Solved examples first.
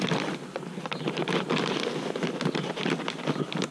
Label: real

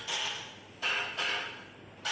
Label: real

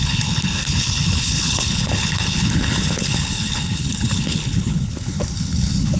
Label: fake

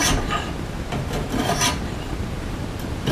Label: fake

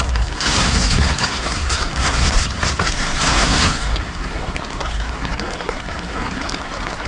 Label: fake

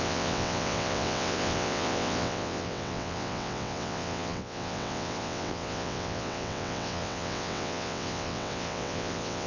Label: fake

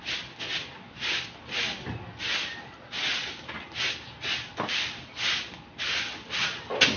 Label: real